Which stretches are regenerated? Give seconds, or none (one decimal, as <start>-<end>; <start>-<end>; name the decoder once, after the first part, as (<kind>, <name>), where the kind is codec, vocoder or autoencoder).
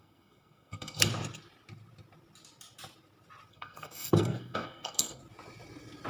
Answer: 0.0-1.1 (codec, SNAC); 3.5-5.2